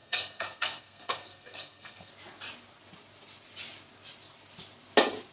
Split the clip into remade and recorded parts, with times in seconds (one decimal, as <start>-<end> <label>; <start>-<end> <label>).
0.0-2.1 remade; 2.1-5.3 recorded